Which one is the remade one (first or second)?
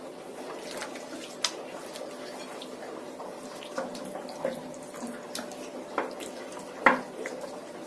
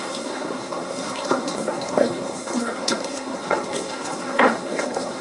second